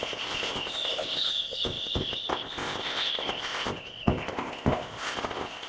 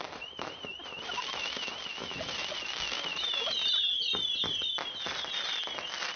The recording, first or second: second